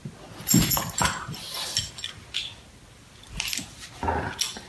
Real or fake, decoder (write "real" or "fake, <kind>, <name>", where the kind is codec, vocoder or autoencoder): real